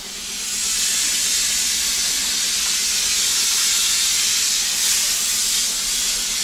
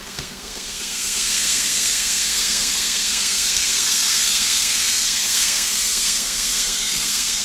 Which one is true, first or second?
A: first